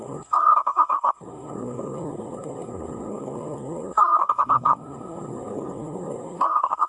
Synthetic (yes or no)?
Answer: yes